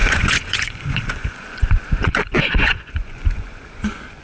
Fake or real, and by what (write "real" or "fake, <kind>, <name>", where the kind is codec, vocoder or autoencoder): fake, vocoder, Vocos